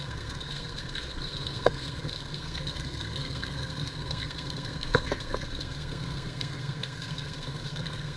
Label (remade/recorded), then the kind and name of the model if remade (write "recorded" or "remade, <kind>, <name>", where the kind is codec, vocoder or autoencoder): remade, codec, SNAC